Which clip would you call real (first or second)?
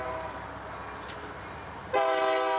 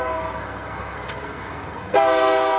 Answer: first